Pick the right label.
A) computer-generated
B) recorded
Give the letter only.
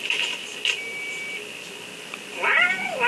B